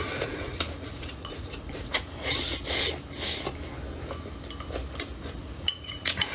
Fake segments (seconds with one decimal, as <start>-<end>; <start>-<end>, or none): 0.0-2.3; 5.4-6.3